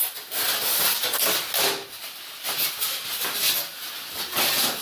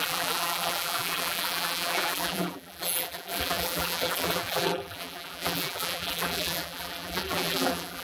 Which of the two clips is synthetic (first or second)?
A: second